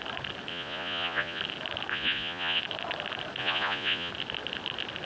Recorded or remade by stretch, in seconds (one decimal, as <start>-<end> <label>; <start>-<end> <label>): 0.0-0.5 recorded; 0.5-1.4 remade; 1.4-1.9 recorded; 1.9-2.6 remade; 2.6-3.4 recorded; 3.4-4.1 remade; 4.1-5.0 recorded